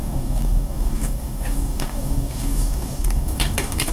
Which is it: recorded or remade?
remade